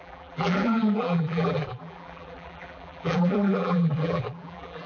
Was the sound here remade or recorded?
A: remade